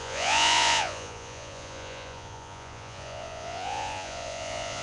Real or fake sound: fake